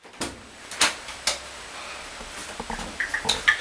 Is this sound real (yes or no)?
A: yes